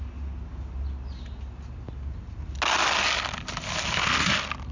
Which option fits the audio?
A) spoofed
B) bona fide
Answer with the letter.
B